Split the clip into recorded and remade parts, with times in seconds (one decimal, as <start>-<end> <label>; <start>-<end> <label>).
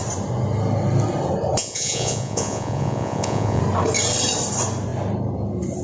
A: 0.0-1.6 recorded; 1.6-3.6 remade; 3.6-5.8 recorded